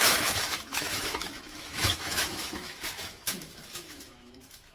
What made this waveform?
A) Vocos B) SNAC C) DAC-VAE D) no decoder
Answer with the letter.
C